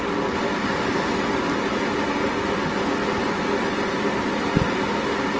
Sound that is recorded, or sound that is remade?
recorded